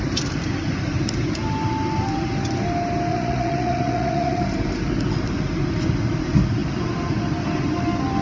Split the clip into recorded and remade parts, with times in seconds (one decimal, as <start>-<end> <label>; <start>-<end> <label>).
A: 0.0-3.1 recorded; 3.1-4.4 remade; 4.4-8.2 recorded